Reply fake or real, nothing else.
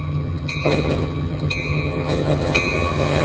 fake